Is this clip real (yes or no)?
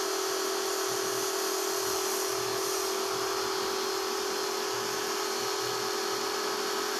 yes